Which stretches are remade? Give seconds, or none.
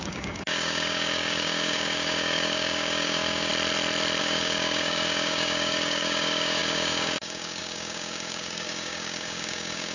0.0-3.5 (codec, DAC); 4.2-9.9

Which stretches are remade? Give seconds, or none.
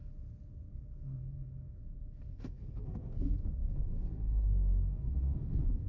0.7-1.8 (codec, SNAC); 2.3-5.9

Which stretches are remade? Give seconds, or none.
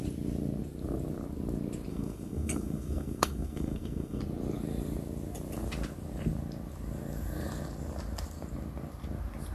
1.9-4.2 (codec, SNAC)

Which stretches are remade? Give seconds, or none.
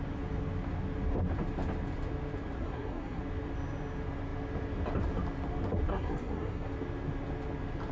2.6-3.2 (codec, SNAC); 5.9-6.7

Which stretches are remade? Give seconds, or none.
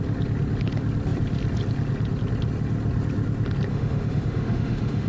3.7-5.1 (autoencoder, DAC-VAE)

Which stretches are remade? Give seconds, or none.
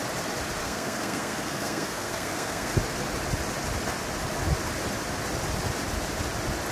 0.6-2.7 (codec, SNAC)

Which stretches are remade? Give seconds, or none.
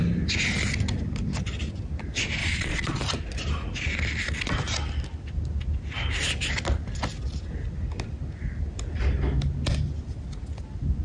2.4-3.0 (vocoder, Vocos)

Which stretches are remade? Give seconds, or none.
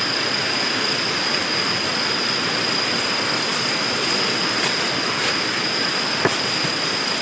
none